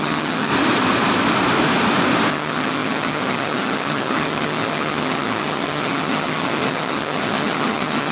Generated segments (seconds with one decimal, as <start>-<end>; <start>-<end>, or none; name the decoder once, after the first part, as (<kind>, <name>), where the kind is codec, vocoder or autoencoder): 0.0-0.5 (vocoder, HiFi-GAN); 2.3-8.1

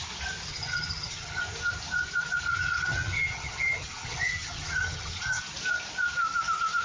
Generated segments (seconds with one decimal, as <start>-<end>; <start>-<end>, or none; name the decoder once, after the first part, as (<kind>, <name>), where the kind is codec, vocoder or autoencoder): 0.5-1.4 (vocoder, HiFi-GAN); 2.5-5.4

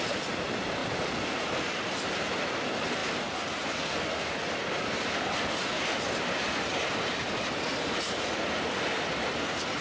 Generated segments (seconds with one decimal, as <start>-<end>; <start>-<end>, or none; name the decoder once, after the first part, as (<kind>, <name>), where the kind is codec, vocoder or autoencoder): none

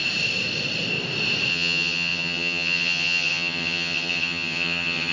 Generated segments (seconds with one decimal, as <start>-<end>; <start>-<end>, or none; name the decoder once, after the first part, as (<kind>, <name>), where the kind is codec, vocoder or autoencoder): 1.5-5.1 (vocoder, HiFi-GAN)